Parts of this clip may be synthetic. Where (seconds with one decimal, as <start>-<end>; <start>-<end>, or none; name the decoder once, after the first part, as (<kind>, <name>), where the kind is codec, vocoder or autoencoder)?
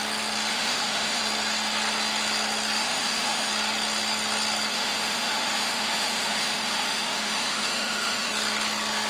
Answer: 0.5-1.2 (autoencoder, DAC-VAE); 2.8-3.5; 4.7-8.3